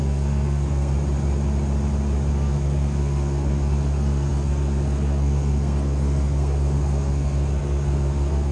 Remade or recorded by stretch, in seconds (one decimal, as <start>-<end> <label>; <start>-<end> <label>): 0.0-0.9 remade; 0.9-2.3 recorded; 2.3-8.5 remade